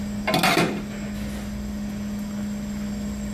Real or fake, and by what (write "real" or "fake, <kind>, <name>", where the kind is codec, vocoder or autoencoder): real